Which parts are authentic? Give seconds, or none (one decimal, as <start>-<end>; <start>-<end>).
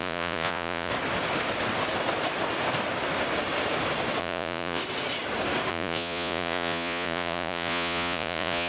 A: 0.9-4.2; 4.8-5.7